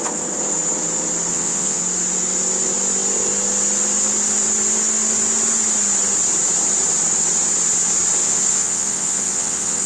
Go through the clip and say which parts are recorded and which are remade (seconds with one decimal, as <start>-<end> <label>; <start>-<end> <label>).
0.0-1.3 recorded; 1.3-1.8 remade; 1.8-8.2 recorded; 8.2-9.9 remade